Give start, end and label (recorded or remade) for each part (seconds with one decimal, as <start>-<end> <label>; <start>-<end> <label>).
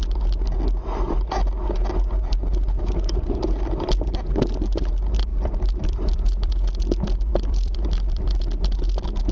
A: 0.0-5.3 recorded; 5.3-6.5 remade; 6.5-7.3 recorded; 7.3-8.4 remade; 8.4-9.3 recorded